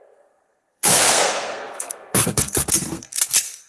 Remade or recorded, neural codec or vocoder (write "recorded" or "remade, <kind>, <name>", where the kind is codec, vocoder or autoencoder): remade, codec, SNAC